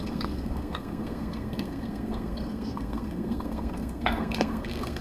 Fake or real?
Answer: fake